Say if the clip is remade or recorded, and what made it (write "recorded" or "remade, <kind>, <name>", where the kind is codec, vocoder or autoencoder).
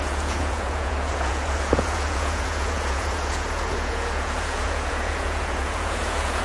remade, vocoder, Vocos